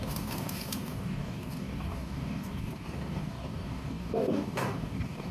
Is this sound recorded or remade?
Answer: remade